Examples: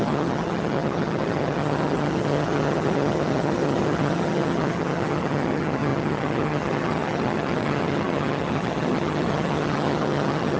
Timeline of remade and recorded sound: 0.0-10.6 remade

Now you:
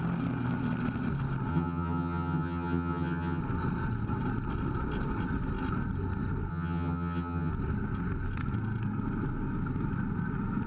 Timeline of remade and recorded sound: 0.0-1.5 recorded; 1.5-3.4 remade; 3.4-6.5 recorded; 6.5-7.5 remade; 7.5-10.7 recorded

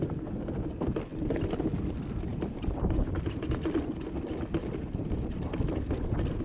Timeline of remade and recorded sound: 0.0-2.3 recorded; 2.3-3.3 remade; 3.3-4.6 recorded; 4.6-5.5 remade; 5.5-6.4 recorded

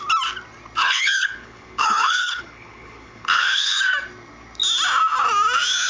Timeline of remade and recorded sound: 0.0-0.8 recorded; 0.8-3.8 remade; 3.8-5.9 recorded

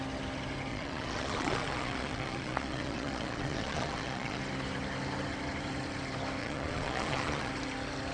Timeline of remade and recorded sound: 0.0-0.7 recorded; 0.7-4.4 remade; 4.4-6.4 recorded; 6.4-7.5 remade; 7.5-8.1 recorded

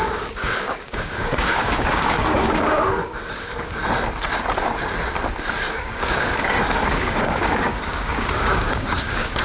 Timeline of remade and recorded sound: 0.0-3.8 remade; 3.8-5.7 recorded; 5.7-9.4 remade

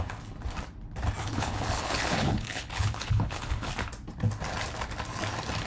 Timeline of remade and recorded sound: 0.0-1.2 recorded; 1.2-3.7 remade; 3.7-5.7 recorded

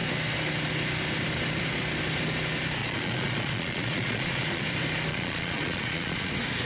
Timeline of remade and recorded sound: 0.0-2.8 recorded; 2.8-4.6 remade; 4.6-5.1 recorded; 5.1-6.3 remade; 6.3-6.7 recorded